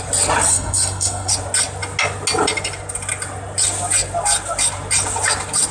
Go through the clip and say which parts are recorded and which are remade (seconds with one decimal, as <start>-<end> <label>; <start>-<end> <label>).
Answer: 0.0-0.5 recorded; 0.5-1.3 remade; 1.3-5.7 recorded